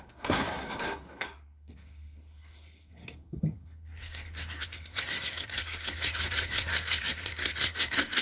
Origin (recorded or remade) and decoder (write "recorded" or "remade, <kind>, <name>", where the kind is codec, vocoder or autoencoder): remade, codec, SNAC